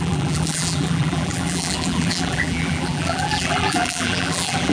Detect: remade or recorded remade